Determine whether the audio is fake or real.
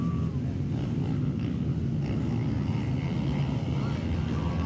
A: real